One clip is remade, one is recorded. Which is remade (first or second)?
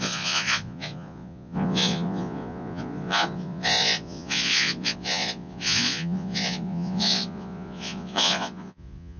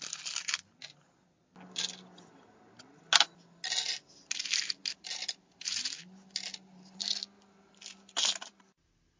first